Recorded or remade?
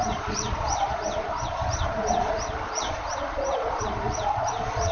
remade